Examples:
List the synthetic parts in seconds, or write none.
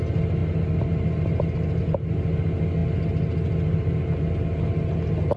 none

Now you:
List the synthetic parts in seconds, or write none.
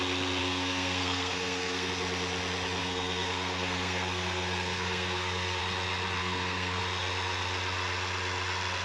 0.4-1.9 (codec, SNAC); 2.8-5.6; 6.2-6.8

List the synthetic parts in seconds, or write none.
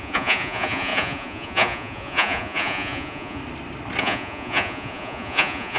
0.0-3.4 (vocoder, Vocos); 4.0-5.8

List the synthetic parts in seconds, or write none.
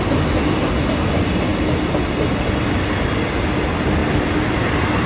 none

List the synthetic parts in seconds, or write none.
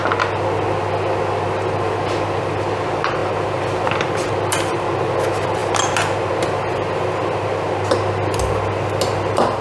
none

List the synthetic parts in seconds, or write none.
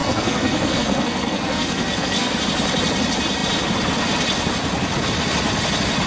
0.0-2.4 (codec, SNAC)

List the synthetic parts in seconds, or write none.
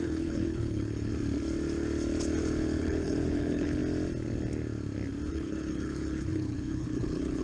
0.0-1.1 (codec, HILCodec); 2.8-3.8; 5.3-7.4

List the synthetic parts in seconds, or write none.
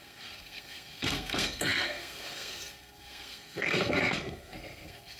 0.0-5.2 (codec, SNAC)